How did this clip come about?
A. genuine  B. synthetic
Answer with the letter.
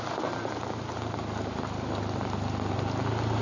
A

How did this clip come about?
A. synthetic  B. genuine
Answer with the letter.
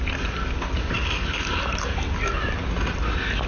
B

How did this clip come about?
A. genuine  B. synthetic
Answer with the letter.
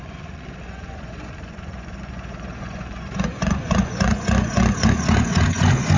B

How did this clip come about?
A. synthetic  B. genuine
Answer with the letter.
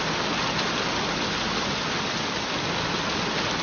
B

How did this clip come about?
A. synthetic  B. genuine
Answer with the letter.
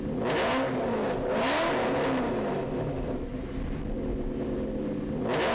B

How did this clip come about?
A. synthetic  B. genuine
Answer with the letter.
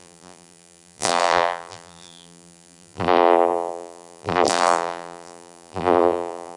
A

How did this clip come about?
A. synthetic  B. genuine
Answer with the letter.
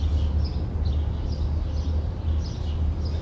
B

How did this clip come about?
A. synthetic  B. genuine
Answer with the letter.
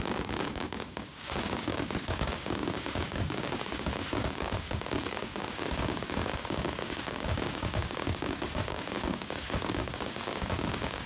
A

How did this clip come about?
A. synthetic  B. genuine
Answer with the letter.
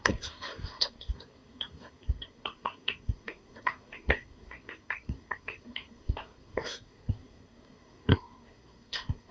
A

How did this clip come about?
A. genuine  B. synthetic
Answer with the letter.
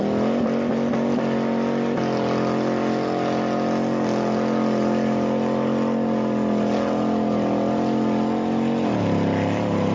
A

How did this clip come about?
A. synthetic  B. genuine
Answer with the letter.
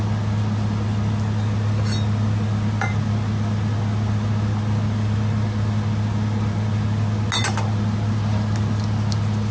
B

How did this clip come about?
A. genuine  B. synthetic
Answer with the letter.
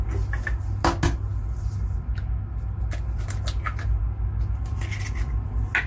A